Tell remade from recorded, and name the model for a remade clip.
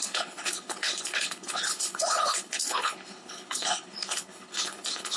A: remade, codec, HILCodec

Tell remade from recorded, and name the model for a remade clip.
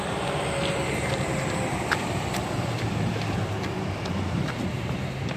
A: remade, vocoder, BigVGAN v2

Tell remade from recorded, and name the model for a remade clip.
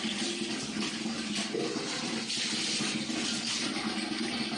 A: recorded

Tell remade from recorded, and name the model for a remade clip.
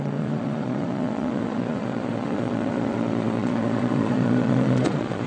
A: remade, vocoder, Vocos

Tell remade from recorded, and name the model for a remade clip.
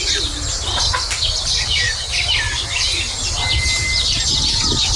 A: recorded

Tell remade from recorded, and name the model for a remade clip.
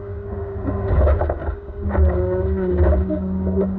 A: remade, codec, DAC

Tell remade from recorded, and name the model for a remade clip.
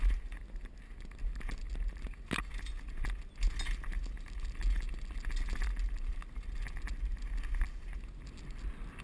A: recorded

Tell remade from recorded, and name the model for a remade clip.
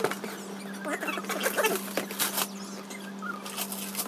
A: recorded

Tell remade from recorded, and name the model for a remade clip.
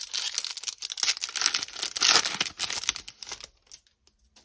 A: recorded